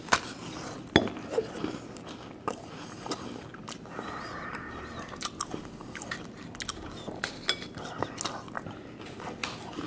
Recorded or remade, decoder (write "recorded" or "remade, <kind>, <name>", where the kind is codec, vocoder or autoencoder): recorded